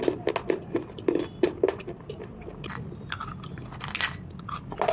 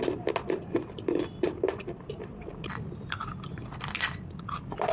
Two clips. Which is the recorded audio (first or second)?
first